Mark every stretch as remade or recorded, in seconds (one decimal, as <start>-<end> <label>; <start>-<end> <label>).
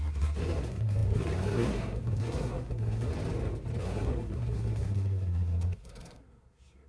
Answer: 0.0-3.1 remade; 3.1-3.8 recorded; 3.8-6.9 remade